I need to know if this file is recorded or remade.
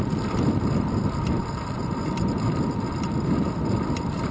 remade